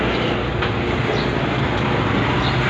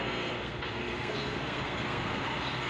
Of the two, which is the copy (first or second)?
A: second